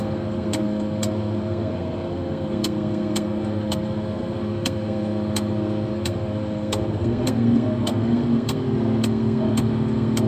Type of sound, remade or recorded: remade